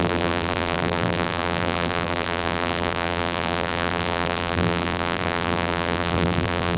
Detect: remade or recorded remade